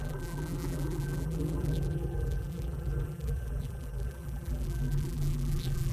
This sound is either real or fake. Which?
fake